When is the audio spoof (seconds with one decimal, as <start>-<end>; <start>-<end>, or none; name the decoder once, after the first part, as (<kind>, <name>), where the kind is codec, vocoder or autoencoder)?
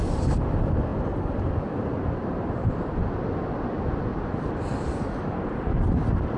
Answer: 2.2-3.3 (vocoder, BigVGAN v2); 4.1-4.6